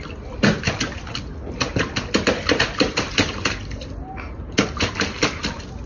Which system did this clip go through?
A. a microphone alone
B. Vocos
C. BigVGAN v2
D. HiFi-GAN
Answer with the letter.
A